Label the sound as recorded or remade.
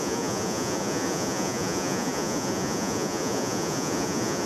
remade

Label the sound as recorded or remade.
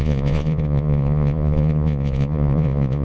remade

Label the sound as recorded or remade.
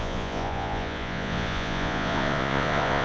remade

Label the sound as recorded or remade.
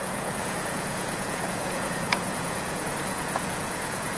remade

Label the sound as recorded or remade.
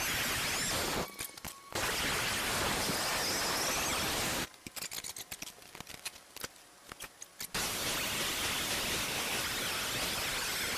recorded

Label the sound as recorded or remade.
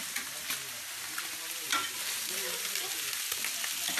recorded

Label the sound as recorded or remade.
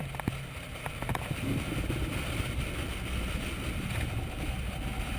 recorded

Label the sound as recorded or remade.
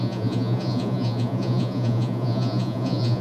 remade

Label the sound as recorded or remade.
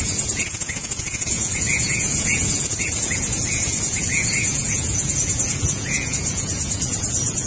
remade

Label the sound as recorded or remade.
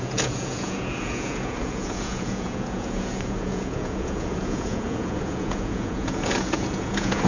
remade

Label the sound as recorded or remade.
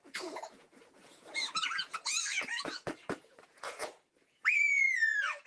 remade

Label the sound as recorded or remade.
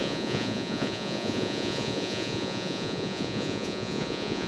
remade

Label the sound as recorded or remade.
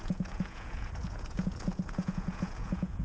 remade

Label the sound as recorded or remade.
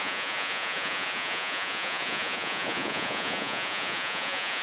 remade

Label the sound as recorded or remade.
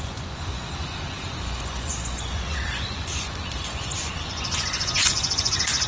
remade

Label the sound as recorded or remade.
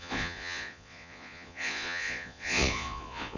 remade